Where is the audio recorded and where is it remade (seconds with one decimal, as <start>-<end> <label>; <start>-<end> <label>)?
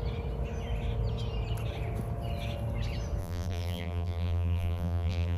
0.0-3.2 recorded; 3.2-5.4 remade